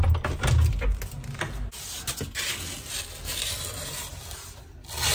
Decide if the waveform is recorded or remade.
recorded